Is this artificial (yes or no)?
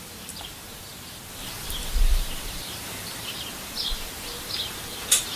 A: yes